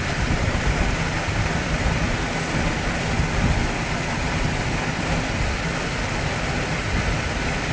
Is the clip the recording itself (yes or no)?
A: yes